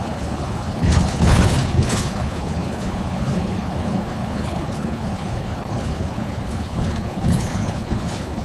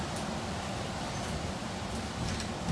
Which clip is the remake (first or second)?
first